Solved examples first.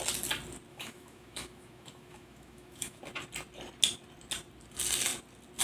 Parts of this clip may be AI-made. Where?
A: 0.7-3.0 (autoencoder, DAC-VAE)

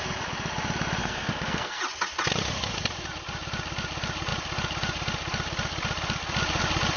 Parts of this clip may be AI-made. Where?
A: 1.0-1.8 (codec, SNAC)

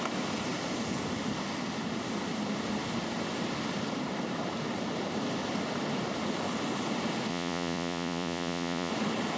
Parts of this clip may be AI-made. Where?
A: 7.3-8.9 (vocoder, Vocos)

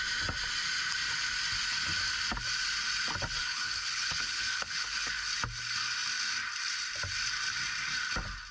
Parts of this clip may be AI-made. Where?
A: 3.4-5.1 (codec, HILCodec)

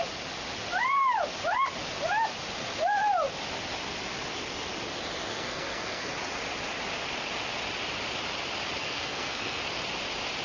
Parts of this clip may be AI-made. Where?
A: 5.3-6.1 (codec, SNAC); 8.8-9.6

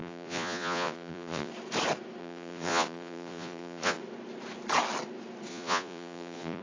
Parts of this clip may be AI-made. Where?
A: 0.0-1.5 (vocoder, Vocos); 2.2-4.0; 5.5-6.6